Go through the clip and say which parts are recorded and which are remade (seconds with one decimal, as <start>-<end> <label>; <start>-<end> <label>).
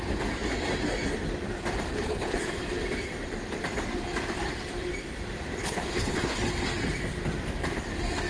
0.0-1.9 recorded; 1.9-2.5 remade; 2.5-5.6 recorded; 5.6-6.4 remade; 6.4-8.3 recorded